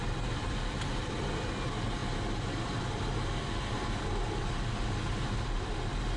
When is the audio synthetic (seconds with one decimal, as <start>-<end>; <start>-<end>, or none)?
none